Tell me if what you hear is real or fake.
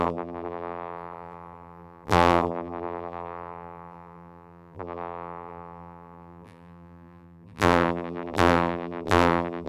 fake